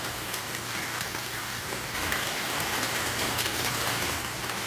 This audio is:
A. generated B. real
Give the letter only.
A